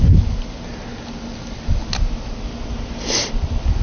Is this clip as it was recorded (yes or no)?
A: yes